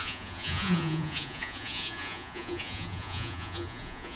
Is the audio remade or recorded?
remade